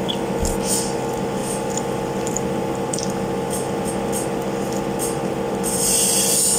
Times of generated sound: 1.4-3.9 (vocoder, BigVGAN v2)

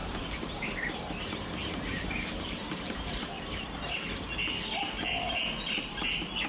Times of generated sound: 0.0-3.9 (vocoder, BigVGAN v2); 4.8-5.3

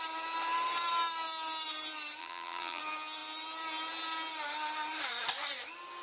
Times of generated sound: 2.2-2.8 (vocoder, BigVGAN v2)

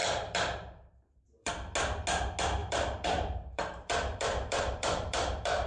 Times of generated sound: 0.0-1.5 (vocoder, BigVGAN v2); 2.6-5.7

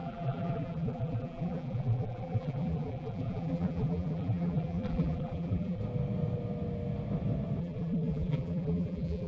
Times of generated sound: 0.0-5.8 (vocoder, BigVGAN v2); 7.6-9.3

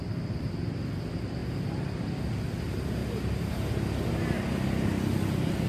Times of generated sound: 1.4-2.3 (vocoder, BigVGAN v2)

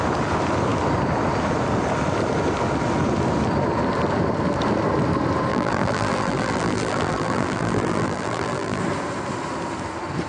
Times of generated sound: 5.5-8.8 (vocoder, BigVGAN v2)